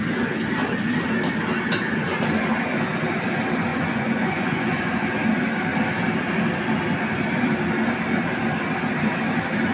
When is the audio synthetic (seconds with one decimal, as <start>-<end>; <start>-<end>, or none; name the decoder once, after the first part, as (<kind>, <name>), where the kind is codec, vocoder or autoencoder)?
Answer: 3.7-4.9 (vocoder, Vocos)